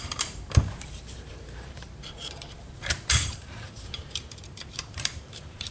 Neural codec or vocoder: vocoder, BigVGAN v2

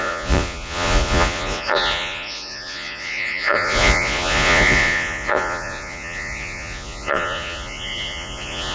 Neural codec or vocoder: vocoder, Vocos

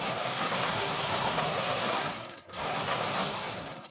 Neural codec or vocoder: codec, SNAC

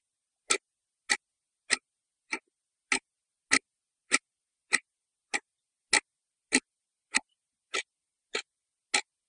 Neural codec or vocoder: none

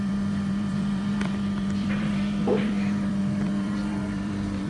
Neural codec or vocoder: vocoder, BigVGAN v2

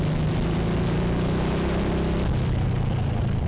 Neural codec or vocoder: none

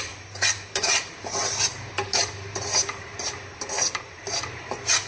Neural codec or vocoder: vocoder, BigVGAN v2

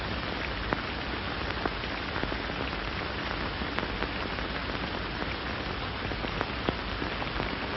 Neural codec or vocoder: none